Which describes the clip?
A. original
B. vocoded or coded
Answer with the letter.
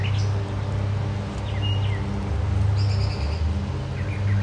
A